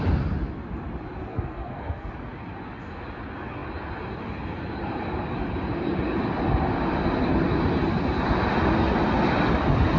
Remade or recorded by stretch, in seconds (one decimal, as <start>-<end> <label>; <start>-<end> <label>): 0.0-1.3 recorded; 1.3-2.1 remade; 2.1-10.0 recorded